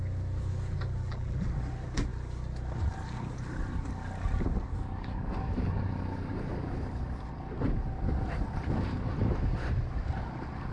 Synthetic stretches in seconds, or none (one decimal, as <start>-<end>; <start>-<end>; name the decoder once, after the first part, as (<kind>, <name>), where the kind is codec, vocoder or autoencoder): 1.0-1.5 (vocoder, BigVGAN v2)